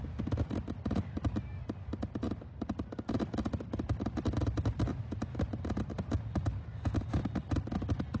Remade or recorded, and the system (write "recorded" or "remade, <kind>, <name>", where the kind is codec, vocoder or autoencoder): recorded